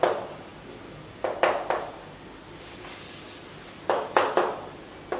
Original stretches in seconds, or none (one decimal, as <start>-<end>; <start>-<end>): 0.0-5.2